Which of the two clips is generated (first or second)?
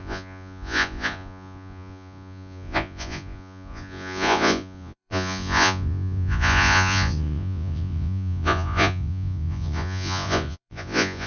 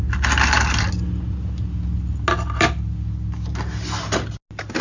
first